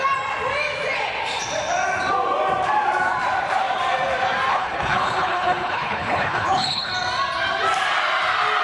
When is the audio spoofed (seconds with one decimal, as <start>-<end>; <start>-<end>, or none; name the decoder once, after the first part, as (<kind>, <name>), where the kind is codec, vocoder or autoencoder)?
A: 4.5-6.9 (codec, HILCodec)